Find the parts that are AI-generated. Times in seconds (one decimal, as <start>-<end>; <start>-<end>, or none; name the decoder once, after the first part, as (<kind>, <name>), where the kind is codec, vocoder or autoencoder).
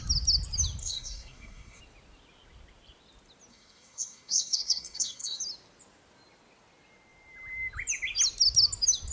0.8-1.8 (codec, SNAC); 3.5-5.4